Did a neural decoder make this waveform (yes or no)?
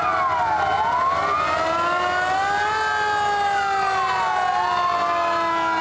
no